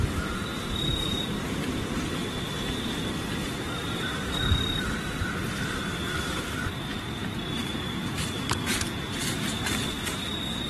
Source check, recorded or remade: remade